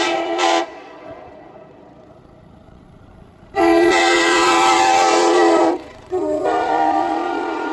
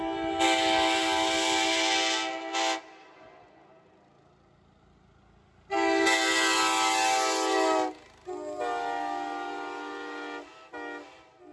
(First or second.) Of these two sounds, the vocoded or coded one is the first